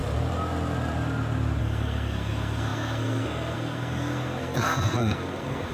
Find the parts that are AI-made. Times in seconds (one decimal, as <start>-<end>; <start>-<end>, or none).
1.6-5.7